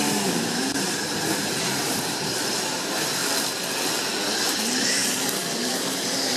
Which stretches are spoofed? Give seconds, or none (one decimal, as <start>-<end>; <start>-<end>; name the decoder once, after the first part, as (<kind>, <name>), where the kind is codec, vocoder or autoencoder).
0.0-3.2 (vocoder, BigVGAN v2); 4.6-5.0; 5.7-6.4

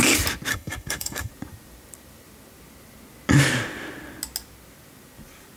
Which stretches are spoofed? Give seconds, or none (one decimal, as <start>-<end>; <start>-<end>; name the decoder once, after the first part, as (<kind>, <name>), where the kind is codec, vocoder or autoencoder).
0.5-1.3 (codec, SNAC)

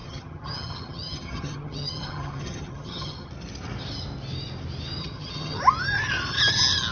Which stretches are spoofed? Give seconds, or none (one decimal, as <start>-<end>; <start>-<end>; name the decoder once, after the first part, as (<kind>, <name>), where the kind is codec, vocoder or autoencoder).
0.0-3.3 (vocoder, HiFi-GAN); 5.0-5.6

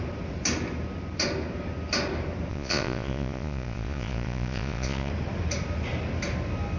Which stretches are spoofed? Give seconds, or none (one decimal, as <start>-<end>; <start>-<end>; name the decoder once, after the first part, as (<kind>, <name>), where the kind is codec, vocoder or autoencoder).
2.5-5.1 (vocoder, Vocos)